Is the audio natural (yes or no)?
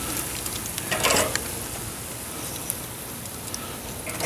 yes